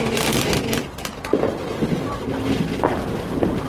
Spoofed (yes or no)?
no